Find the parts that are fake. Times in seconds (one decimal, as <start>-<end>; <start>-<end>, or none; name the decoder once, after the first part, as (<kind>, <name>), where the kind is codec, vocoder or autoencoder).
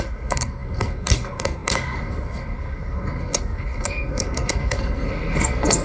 0.0-5.8 (codec, SNAC)